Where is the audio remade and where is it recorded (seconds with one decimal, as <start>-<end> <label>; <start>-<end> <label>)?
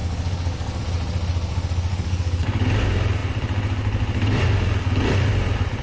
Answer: 0.0-0.8 remade; 0.8-1.9 recorded; 1.9-2.6 remade; 2.6-5.8 recorded